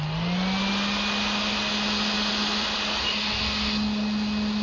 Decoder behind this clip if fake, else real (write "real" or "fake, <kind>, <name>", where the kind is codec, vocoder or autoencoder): real